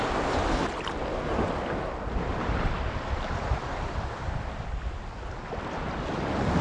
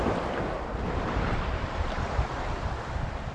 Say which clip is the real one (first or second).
first